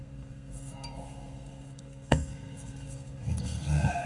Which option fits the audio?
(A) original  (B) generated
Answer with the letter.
B